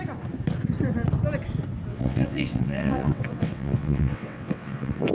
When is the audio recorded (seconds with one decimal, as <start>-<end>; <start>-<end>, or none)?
0.0-1.9